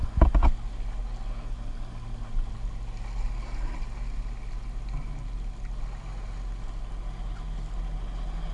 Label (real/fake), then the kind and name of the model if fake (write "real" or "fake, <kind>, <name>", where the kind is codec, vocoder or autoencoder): real